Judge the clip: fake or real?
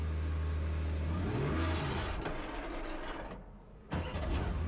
real